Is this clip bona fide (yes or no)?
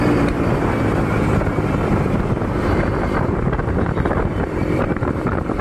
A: no